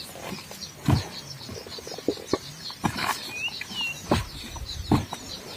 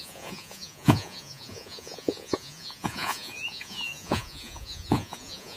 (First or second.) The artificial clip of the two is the second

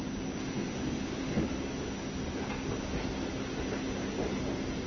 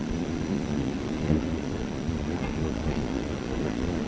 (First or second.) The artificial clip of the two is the second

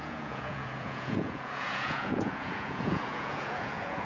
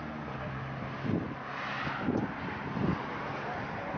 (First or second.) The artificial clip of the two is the first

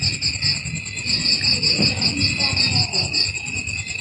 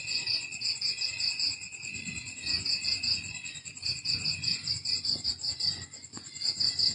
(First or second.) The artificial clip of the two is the second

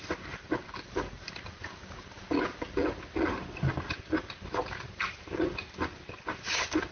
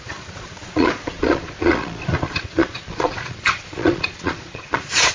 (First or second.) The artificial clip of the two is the second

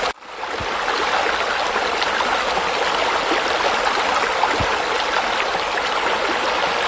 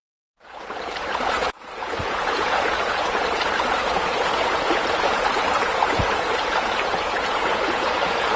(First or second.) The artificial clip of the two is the second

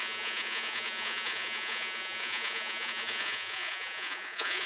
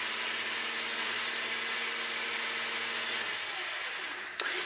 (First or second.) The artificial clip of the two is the first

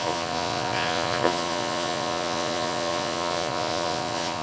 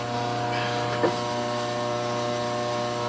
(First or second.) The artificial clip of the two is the first